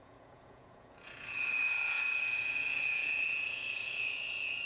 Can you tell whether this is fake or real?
fake